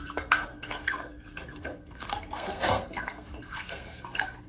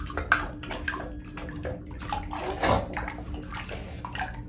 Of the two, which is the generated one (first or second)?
first